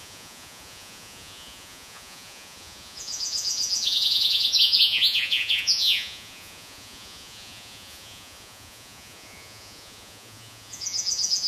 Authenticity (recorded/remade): remade